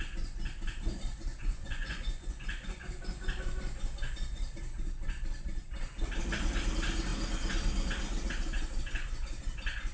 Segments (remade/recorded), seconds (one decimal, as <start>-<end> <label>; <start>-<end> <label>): 0.0-1.3 recorded; 1.3-2.9 remade; 2.9-9.9 recorded